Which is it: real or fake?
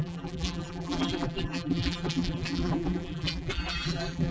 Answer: fake